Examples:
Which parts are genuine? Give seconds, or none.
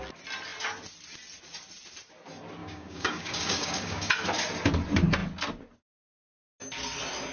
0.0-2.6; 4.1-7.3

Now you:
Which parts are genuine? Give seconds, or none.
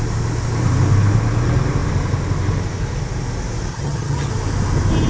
0.0-3.7; 4.3-5.1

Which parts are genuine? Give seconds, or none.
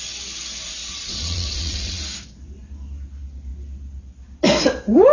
0.0-0.8; 2.0-5.1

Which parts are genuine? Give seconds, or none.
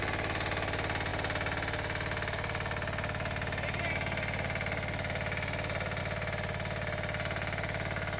0.0-8.2